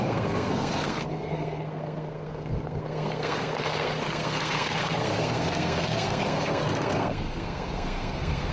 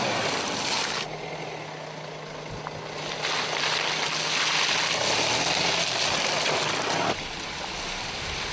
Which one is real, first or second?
second